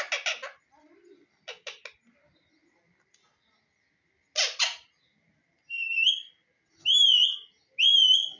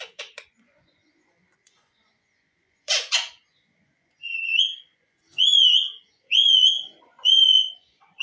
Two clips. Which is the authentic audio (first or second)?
first